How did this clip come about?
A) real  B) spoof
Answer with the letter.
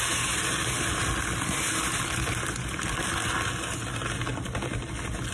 A